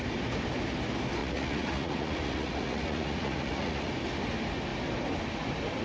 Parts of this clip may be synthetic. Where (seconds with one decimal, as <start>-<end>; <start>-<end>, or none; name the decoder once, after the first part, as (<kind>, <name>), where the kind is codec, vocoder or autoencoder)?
1.2-3.9 (vocoder, Vocos)